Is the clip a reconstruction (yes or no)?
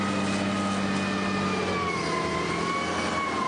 no